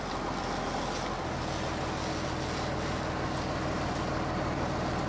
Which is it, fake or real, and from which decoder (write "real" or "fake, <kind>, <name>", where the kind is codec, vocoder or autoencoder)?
real